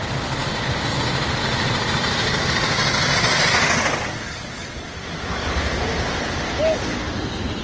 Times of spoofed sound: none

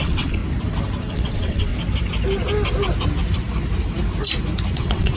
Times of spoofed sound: 0.0-0.4 (vocoder, WaveNeXt); 1.1-1.7; 4.8-5.2

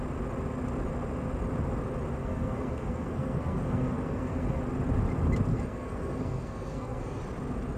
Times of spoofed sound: 2.2-4.6 (codec, SNAC); 5.5-7.2

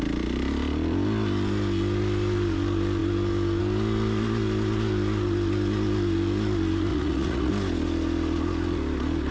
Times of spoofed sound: 6.9-7.5 (vocoder, Vocos)

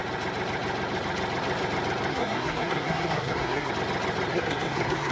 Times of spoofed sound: 2.1-3.7 (codec, SNAC); 4.3-5.1

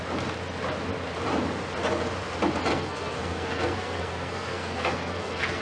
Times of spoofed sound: 2.7-5.6 (codec, SNAC)

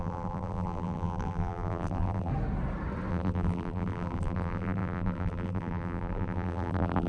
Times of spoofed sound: 0.0-2.3 (vocoder, BigVGAN v2); 3.1-7.1

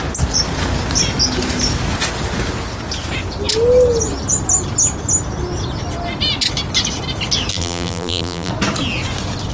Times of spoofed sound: 7.5-8.5 (vocoder, BigVGAN v2)